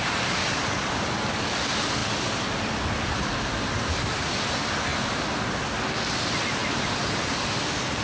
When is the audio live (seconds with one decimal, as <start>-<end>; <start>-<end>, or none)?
0.0-8.0